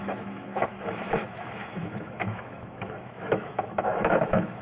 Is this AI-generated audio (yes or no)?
yes